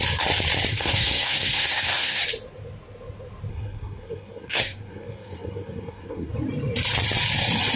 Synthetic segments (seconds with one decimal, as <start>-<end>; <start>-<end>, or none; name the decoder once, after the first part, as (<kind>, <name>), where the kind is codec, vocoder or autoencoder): 0.7-2.2 (codec, SNAC); 3.5-6.3

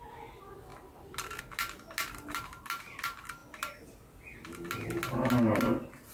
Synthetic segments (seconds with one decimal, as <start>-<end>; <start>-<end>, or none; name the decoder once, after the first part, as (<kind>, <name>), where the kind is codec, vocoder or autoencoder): none

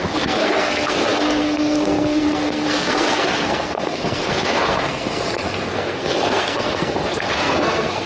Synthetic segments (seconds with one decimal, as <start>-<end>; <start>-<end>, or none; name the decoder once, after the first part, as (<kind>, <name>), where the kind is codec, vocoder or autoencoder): 0.0-8.1 (codec, SNAC)

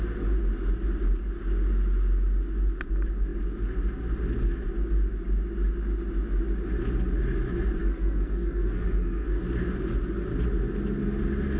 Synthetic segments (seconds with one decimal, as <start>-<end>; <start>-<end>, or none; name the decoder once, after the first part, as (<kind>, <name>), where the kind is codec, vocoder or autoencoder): 7.8-9.4 (codec, SNAC)

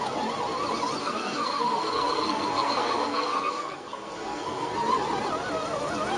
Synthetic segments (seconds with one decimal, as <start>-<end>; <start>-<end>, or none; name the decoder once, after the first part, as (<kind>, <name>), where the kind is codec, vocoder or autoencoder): 1.0-4.7 (codec, SNAC)

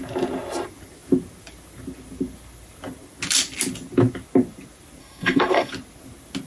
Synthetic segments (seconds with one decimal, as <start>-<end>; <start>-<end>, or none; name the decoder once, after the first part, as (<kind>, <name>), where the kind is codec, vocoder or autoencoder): 5.0-5.7 (codec, SNAC)

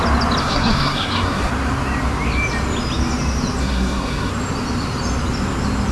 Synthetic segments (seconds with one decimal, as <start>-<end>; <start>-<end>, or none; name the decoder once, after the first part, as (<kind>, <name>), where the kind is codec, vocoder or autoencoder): 0.4-1.5 (codec, SNAC); 3.6-4.3